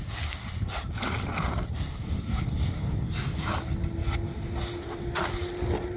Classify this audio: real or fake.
real